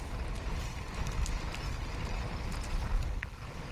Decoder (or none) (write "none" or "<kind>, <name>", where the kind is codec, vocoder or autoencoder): none